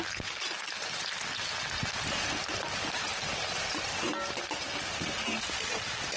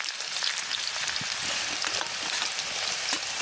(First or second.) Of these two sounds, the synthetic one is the second